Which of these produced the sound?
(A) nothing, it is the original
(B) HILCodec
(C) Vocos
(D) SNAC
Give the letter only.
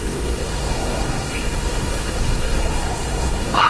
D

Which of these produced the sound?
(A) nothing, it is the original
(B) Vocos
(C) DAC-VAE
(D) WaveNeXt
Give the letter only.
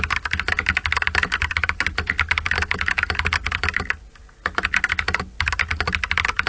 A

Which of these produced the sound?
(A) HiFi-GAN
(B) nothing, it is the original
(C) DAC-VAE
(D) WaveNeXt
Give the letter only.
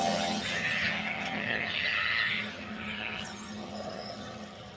A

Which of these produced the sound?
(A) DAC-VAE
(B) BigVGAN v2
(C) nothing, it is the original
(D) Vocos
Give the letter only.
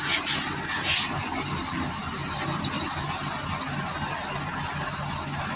C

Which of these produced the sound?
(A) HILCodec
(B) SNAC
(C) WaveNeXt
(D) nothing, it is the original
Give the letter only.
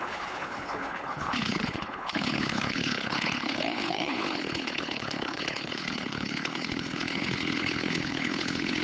A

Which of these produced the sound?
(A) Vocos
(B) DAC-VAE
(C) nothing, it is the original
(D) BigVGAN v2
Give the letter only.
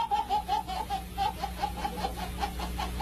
C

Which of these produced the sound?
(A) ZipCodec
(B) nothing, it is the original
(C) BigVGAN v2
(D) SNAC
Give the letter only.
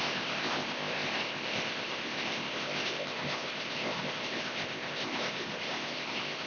A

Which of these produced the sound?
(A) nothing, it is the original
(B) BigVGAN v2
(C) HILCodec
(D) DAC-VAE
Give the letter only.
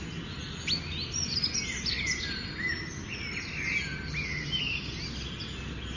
A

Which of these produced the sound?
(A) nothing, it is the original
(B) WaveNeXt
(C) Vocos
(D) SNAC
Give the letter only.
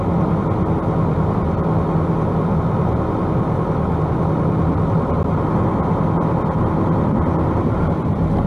A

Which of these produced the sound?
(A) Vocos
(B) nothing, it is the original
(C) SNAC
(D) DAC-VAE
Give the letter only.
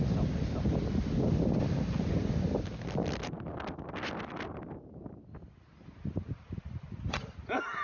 B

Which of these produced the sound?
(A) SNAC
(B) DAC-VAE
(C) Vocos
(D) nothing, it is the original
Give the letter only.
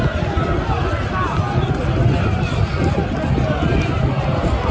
D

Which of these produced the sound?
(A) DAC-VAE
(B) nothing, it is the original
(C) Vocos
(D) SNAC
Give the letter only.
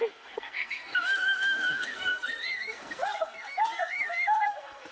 D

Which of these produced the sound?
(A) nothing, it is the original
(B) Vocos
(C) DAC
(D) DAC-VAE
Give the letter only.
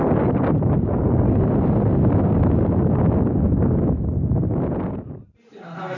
A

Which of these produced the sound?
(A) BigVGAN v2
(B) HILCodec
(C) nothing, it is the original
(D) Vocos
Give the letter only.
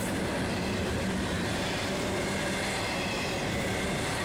A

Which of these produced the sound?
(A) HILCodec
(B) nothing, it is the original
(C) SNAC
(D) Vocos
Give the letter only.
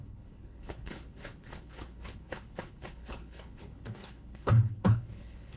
A